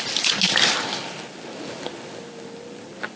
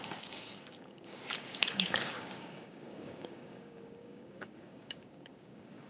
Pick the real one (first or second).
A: first